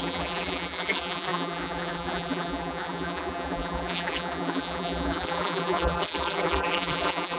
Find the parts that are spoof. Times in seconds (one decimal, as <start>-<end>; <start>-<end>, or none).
0.0-7.4